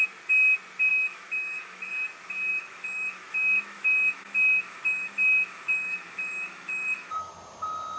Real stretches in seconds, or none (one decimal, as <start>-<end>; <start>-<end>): 0.0-0.9; 1.9-2.5; 7.3-8.0